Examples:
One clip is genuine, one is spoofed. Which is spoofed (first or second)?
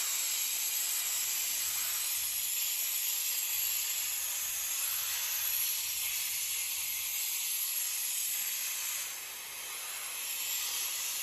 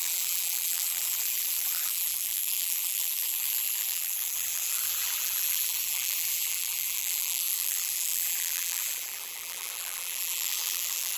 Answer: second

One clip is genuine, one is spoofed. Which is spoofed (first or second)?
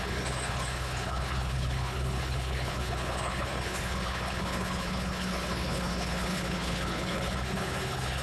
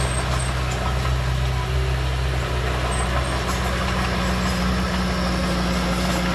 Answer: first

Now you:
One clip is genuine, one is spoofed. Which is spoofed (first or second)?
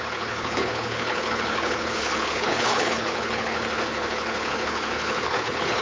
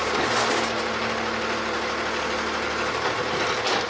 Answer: first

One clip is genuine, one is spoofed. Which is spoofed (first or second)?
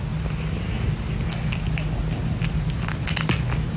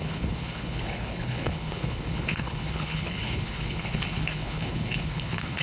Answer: second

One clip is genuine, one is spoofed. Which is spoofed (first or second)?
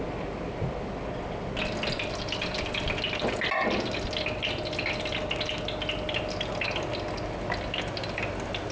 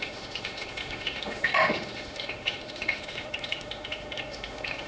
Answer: second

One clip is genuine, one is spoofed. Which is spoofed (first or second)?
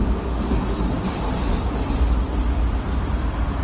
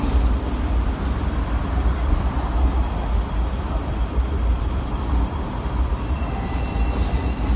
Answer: second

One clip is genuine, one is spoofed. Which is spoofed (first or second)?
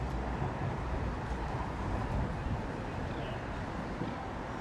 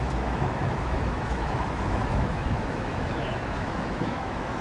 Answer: second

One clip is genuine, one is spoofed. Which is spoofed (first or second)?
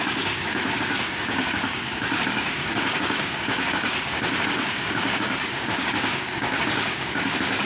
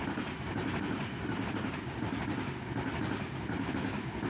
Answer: first